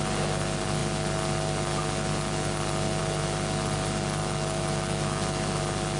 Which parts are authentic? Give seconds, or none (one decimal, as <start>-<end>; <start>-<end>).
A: 0.0-4.2; 5.6-6.0